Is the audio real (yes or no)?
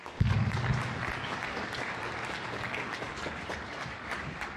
no